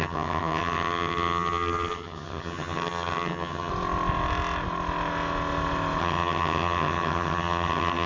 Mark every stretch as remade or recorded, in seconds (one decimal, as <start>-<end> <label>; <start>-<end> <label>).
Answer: 0.0-3.7 remade; 3.7-6.0 recorded; 6.0-8.1 remade